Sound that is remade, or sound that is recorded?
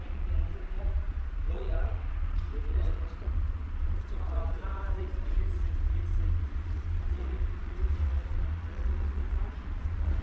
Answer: remade